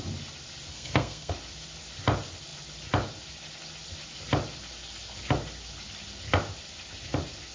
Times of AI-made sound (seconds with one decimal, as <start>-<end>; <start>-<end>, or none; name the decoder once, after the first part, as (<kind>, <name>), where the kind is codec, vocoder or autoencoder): 0.7-1.3 (codec, SNAC)